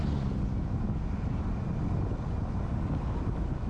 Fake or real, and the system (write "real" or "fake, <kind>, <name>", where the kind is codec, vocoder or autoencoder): real